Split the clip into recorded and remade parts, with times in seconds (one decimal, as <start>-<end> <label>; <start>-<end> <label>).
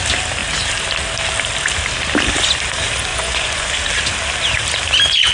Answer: 0.0-3.1 recorded; 3.1-3.7 remade; 3.7-5.3 recorded